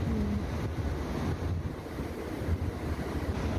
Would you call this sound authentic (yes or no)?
yes